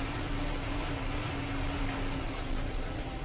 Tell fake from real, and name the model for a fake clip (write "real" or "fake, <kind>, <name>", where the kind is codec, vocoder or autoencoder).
real